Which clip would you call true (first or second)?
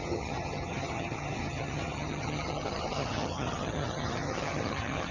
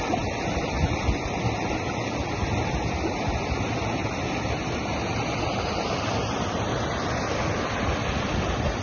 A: second